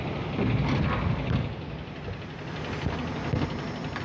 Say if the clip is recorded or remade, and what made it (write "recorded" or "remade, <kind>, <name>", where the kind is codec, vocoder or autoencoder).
recorded